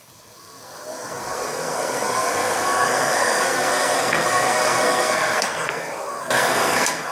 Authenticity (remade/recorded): remade